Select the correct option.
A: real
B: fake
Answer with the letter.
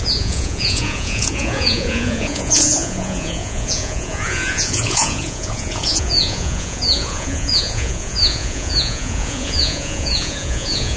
B